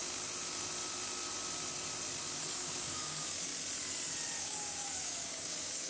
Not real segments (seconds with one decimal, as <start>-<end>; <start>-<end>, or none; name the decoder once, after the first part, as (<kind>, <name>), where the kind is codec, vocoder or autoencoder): 2.4-3.5 (codec, DAC); 4.4-5.9